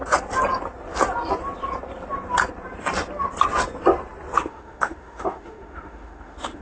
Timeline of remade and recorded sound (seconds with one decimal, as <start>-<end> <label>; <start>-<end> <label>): 0.0-4.4 recorded; 4.4-6.6 remade